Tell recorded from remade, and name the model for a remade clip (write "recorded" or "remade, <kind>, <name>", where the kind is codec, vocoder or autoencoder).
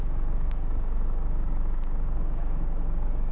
remade, codec, DAC